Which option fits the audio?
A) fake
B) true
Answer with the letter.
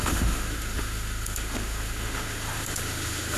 A